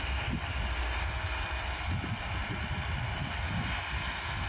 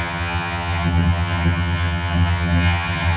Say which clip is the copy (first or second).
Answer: second